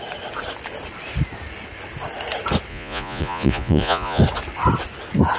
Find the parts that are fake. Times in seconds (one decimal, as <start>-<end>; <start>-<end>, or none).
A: 2.7-4.2